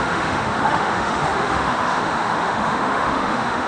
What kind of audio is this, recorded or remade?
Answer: remade